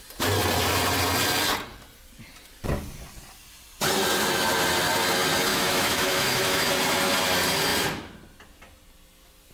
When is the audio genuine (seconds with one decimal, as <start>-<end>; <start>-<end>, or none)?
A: 0.0-5.5; 6.7-9.5